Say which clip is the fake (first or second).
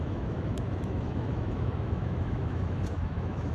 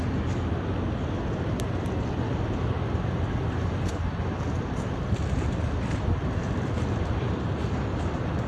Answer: first